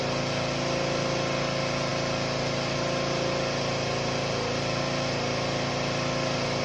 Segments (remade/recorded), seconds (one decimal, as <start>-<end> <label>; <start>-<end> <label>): 0.0-6.6 recorded

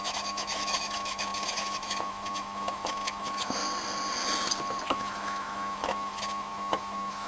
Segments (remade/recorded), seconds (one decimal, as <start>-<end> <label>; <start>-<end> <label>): 0.0-3.6 remade; 3.6-4.9 recorded; 4.9-7.3 remade